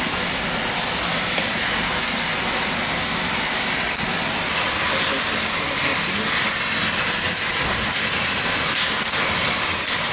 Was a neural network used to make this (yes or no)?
no